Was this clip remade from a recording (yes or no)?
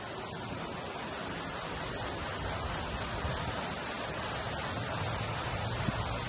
no